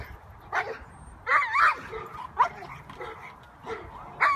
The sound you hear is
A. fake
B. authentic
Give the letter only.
B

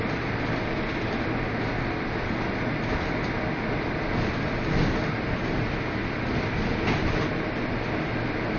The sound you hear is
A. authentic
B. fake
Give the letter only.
A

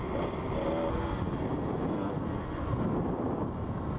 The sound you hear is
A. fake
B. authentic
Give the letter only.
B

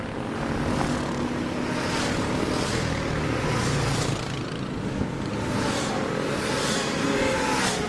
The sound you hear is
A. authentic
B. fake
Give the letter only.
A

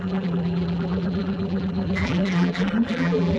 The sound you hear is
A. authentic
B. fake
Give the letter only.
B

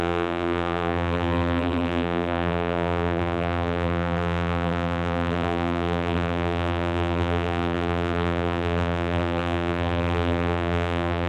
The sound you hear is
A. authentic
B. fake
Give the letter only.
B